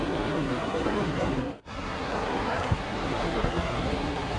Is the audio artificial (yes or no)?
yes